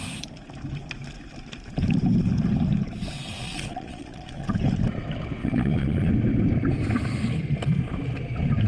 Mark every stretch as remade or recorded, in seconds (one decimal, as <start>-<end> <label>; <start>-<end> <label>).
0.0-3.4 recorded; 3.4-4.5 remade; 4.5-5.4 recorded; 5.4-6.1 remade; 6.1-8.7 recorded